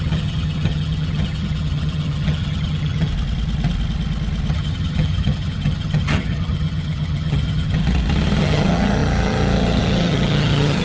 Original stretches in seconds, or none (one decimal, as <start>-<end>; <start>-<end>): 3.1-4.5; 7.8-8.4

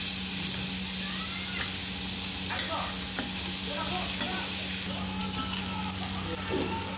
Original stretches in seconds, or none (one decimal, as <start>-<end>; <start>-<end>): 0.0-7.0

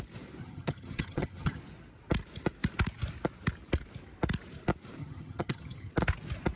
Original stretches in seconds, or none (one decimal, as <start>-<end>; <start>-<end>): 0.0-0.4; 1.6-5.0; 5.9-6.6